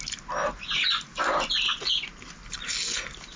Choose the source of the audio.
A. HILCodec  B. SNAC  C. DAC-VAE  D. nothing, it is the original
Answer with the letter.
D